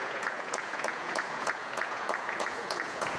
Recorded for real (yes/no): no